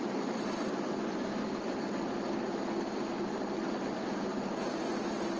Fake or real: real